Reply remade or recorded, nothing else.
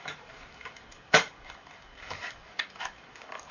remade